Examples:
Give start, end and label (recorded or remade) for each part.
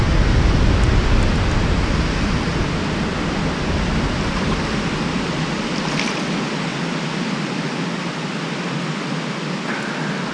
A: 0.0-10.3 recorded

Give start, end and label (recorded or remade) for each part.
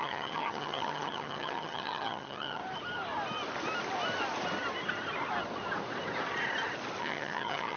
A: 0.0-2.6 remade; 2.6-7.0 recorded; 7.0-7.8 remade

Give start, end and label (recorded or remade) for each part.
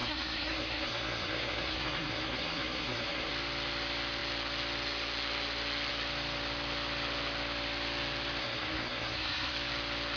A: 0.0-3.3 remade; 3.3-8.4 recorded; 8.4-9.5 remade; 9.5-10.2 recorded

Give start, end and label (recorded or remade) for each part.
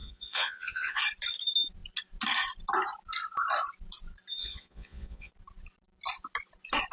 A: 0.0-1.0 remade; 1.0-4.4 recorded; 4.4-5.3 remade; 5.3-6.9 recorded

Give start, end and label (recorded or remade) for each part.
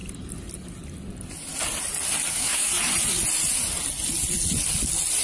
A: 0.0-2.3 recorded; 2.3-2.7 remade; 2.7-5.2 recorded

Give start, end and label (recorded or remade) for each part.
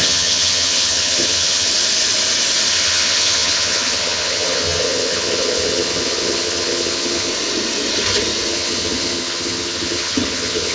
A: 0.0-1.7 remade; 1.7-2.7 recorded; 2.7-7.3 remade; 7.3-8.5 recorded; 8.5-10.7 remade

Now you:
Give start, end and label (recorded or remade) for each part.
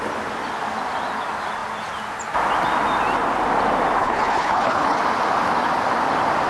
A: 0.0-4.0 recorded; 4.0-5.0 remade; 5.0-6.5 recorded